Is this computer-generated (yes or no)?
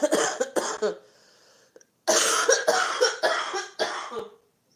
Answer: no